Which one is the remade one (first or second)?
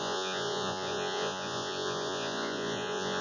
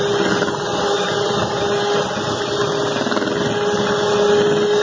first